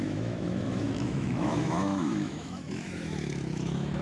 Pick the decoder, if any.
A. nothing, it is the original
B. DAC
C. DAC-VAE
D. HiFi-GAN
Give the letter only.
C